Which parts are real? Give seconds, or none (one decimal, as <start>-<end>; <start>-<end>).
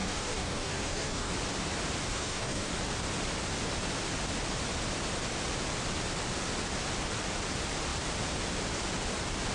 1.3-2.1; 2.7-9.5